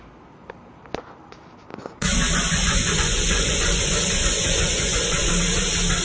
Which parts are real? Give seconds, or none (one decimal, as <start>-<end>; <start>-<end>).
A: 0.0-1.7; 5.3-6.0